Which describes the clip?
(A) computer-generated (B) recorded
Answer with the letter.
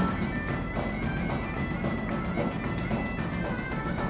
B